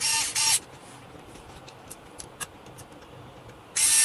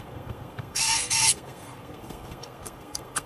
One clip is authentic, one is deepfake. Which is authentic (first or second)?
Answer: first